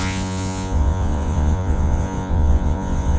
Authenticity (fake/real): fake